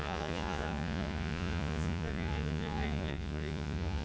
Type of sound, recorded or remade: remade